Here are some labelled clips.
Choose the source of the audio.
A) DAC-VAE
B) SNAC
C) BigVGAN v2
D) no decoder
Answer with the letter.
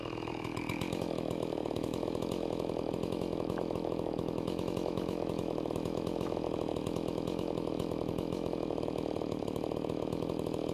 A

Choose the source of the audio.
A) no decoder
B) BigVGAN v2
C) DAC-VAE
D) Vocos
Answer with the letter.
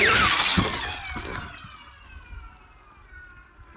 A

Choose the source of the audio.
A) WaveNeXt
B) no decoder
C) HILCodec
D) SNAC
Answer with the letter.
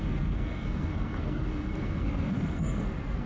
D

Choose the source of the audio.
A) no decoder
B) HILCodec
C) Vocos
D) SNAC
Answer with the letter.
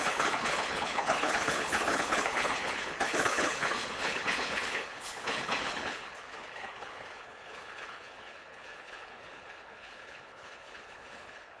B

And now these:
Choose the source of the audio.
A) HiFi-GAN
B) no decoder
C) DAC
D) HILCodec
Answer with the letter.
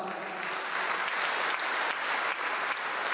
B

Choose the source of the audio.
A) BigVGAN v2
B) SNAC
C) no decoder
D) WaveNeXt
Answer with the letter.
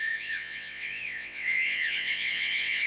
D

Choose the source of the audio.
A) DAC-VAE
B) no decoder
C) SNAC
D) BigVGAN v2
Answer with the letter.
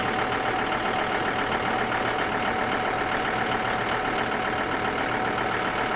B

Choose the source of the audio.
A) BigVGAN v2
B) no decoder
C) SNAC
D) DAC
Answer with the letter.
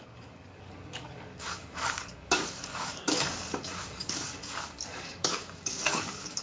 D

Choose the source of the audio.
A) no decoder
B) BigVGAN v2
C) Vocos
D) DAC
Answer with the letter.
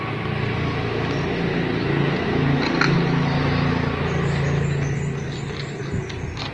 A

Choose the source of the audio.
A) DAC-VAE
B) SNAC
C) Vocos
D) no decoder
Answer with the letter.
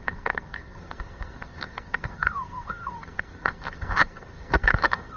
B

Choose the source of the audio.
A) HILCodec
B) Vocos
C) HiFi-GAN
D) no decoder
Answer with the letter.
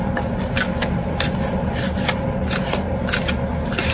D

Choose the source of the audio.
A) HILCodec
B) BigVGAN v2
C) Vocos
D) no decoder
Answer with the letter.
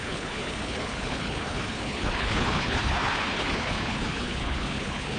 A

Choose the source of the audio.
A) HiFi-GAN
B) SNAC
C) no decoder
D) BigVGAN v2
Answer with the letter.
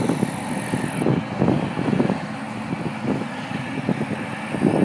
C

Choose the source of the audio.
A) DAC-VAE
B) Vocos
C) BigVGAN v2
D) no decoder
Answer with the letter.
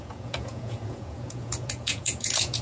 B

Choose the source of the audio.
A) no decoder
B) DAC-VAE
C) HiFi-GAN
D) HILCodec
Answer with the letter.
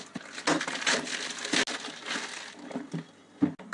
A